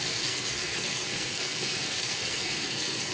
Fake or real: fake